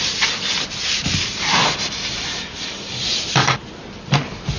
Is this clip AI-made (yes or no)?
no